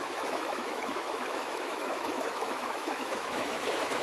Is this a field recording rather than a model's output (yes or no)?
no